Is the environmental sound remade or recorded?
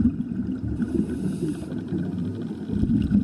recorded